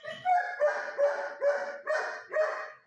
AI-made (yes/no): no